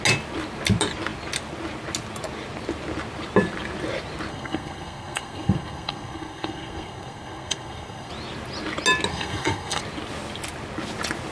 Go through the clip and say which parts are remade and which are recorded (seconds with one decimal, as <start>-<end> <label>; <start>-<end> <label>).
0.0-4.3 recorded; 4.3-8.1 remade; 8.1-9.1 recorded; 9.1-9.8 remade; 9.8-11.3 recorded